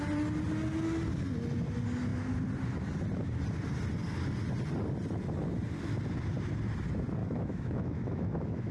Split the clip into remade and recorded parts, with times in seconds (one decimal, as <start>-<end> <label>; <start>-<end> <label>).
0.0-7.2 recorded; 7.2-8.7 remade